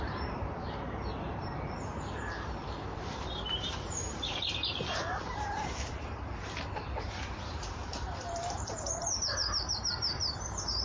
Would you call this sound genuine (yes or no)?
no